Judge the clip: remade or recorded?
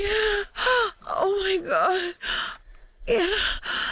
recorded